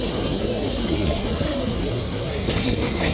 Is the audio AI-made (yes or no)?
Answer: yes